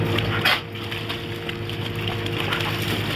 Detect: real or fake real